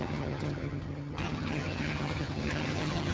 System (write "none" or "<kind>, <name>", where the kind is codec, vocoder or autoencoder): vocoder, HiFi-GAN